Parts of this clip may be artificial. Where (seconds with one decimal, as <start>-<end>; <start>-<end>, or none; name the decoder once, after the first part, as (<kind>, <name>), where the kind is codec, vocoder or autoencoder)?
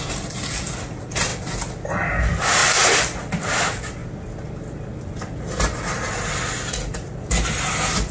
none